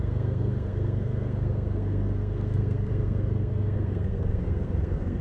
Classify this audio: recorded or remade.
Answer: remade